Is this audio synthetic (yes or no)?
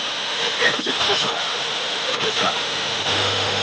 yes